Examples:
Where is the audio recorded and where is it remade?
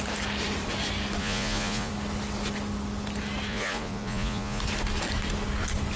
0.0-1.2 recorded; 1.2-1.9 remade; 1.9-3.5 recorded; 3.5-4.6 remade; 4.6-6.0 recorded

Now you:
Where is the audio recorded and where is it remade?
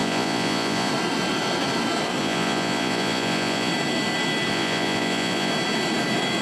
0.0-0.9 remade; 0.9-2.2 recorded; 2.2-3.7 remade; 3.7-4.5 recorded; 4.5-5.5 remade; 5.5-6.4 recorded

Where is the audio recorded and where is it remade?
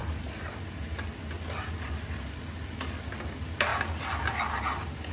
0.0-5.1 recorded